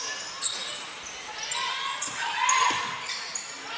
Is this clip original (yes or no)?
yes